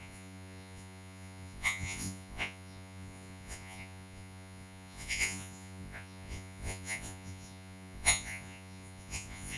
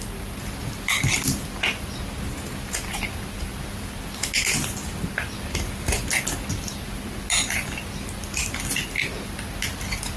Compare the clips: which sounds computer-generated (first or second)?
first